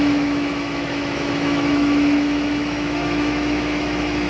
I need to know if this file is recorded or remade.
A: remade